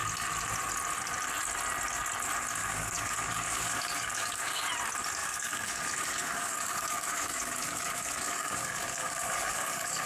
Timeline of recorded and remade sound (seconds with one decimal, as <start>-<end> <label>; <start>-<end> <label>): 0.0-2.6 recorded; 2.6-4.7 remade; 4.7-5.2 recorded; 5.2-10.1 remade